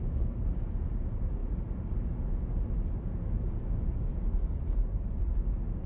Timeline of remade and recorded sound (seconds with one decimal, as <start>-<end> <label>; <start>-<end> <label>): 0.0-4.1 recorded; 4.1-5.2 remade; 5.2-5.9 recorded